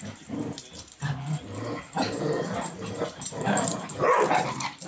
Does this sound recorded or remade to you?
recorded